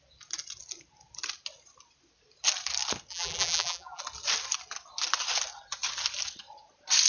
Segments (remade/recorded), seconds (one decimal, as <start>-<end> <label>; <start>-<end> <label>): 0.0-3.1 recorded; 3.1-4.0 remade; 4.0-7.1 recorded